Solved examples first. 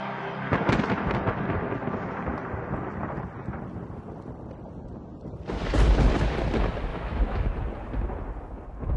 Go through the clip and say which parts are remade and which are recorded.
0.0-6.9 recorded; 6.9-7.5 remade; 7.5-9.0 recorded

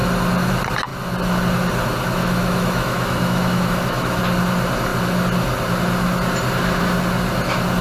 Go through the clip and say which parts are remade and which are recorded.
0.0-2.2 recorded; 2.2-4.2 remade; 4.2-7.8 recorded

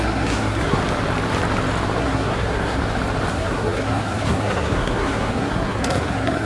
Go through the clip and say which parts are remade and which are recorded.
0.0-0.8 remade; 0.8-2.0 recorded; 2.0-2.8 remade; 2.8-3.3 recorded; 3.3-6.5 remade